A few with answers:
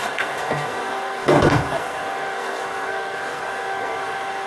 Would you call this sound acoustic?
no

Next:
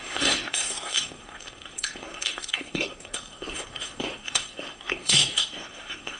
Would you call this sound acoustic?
no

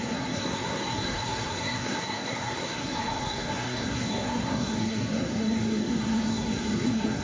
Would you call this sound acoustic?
no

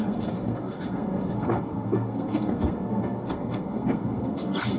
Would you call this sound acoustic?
no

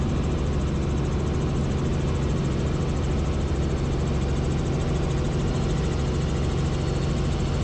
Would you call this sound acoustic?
yes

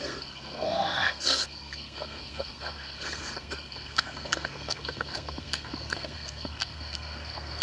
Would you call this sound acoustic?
no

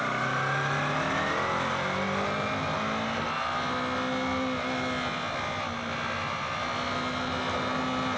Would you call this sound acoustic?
yes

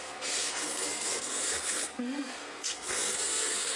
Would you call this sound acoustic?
no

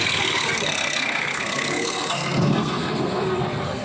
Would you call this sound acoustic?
no